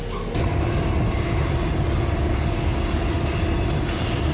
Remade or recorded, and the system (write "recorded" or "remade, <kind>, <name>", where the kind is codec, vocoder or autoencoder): recorded